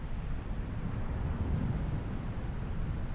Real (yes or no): yes